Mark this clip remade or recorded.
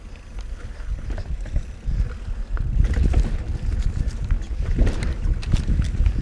recorded